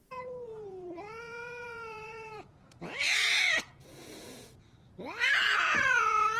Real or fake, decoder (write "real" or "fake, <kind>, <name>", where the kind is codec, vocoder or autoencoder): fake, vocoder, Vocos